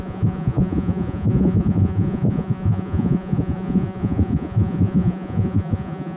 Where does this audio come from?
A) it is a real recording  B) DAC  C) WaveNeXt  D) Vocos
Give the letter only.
D